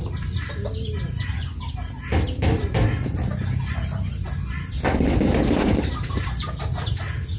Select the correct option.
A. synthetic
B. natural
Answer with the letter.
B